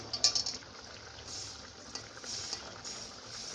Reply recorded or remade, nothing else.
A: recorded